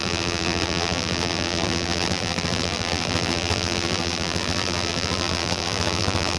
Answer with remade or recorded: remade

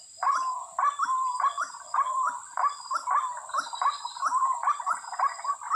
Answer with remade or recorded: remade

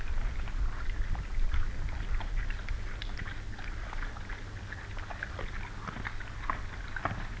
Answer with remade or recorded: recorded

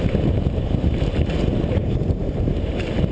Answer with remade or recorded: remade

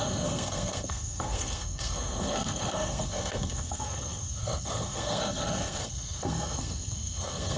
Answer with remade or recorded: remade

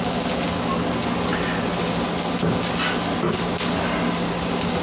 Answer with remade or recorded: recorded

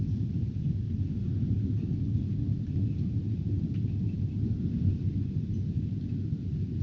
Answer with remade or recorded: recorded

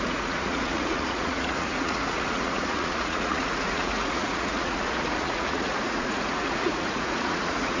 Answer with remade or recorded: remade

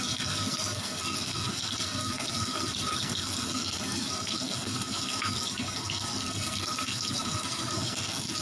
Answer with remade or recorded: remade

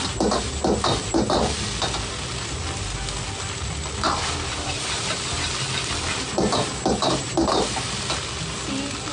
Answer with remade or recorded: recorded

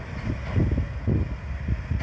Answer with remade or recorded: recorded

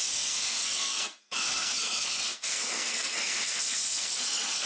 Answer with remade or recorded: remade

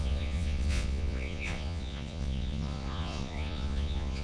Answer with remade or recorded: remade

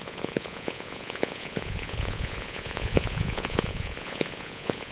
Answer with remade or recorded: remade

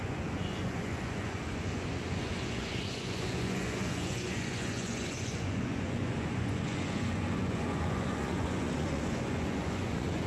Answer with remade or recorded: remade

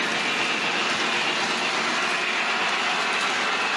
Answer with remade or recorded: recorded